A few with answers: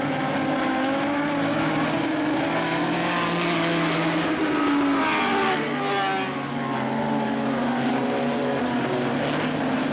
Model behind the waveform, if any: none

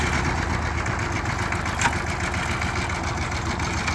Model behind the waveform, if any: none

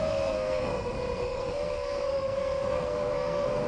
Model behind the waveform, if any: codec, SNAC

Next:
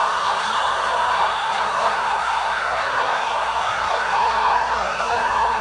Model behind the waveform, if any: codec, SNAC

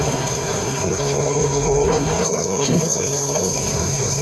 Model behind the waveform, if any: codec, SNAC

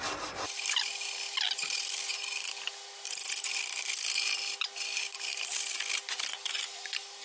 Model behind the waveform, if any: none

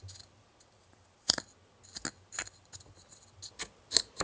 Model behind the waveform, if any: none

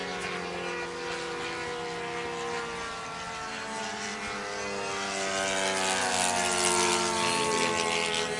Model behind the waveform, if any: none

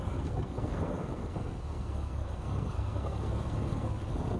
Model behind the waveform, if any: codec, SNAC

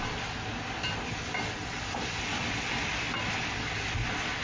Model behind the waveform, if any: none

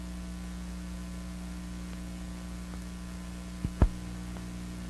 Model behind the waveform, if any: none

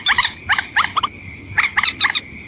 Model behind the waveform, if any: none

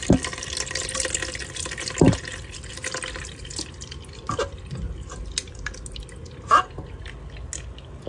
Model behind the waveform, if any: none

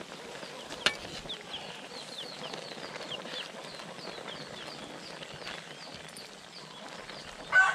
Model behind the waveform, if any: none